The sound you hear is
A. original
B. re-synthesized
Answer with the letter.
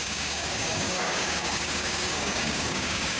B